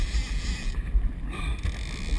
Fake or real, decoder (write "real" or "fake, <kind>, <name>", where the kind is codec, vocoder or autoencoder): real